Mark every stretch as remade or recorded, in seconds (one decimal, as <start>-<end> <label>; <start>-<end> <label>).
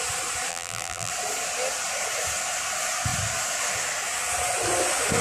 0.0-0.5 recorded; 0.5-1.1 remade; 1.1-5.2 recorded